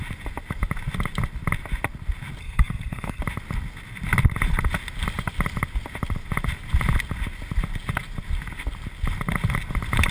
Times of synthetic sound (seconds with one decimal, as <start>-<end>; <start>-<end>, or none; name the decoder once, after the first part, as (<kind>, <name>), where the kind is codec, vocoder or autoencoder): 2.4-3.2 (codec, SNAC)